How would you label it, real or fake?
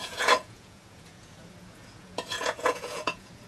fake